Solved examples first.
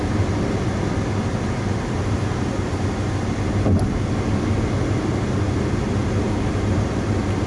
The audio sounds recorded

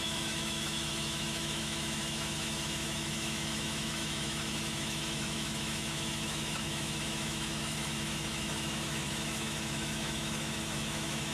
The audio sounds remade